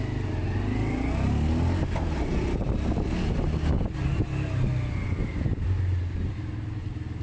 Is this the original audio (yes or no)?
yes